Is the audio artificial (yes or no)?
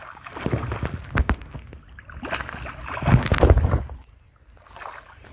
no